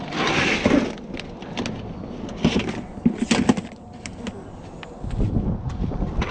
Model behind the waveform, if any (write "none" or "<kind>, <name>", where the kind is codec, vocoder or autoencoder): none